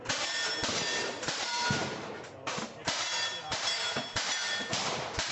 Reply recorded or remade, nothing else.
remade